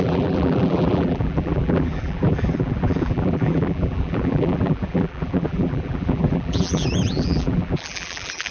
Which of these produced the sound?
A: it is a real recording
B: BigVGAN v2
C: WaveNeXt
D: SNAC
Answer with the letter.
B